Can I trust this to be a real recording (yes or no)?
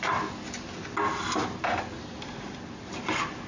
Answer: yes